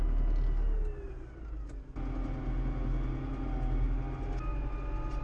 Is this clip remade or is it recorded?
recorded